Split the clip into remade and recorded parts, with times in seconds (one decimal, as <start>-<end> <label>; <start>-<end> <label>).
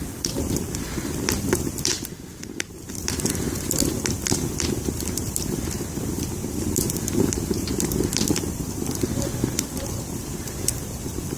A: 0.0-1.9 remade; 1.9-2.9 recorded; 2.9-11.4 remade